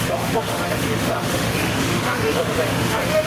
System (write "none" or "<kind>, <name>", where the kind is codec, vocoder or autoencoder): autoencoder, DAC-VAE